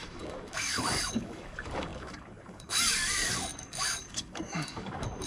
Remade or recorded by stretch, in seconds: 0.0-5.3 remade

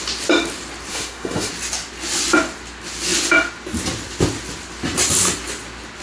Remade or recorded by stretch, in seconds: 0.0-0.9 recorded; 0.9-1.5 remade; 1.5-6.0 recorded